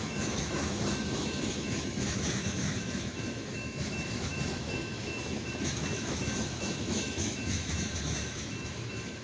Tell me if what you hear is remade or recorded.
remade